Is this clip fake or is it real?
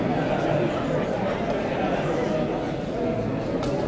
real